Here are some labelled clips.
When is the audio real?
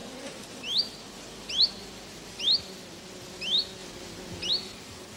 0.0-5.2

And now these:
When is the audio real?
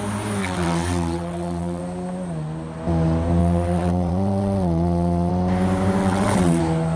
0.0-0.4; 1.8-3.4; 5.3-6.0; 6.6-7.0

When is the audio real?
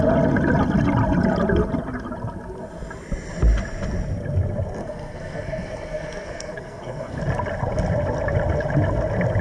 0.0-4.8; 7.2-9.4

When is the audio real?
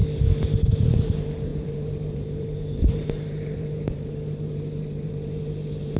0.0-0.8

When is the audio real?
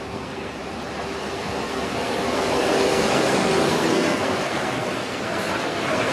0.6-1.2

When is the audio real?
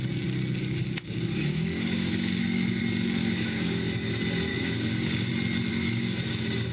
0.0-0.6; 2.8-3.2; 3.9-4.5; 5.3-5.7; 6.2-6.7